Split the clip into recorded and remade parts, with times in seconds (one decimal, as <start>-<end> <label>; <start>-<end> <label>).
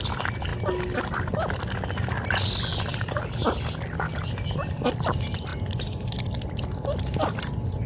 0.0-7.9 recorded